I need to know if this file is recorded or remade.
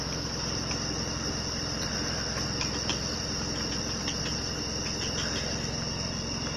recorded